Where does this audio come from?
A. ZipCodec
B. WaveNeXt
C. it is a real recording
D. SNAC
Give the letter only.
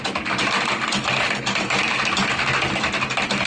C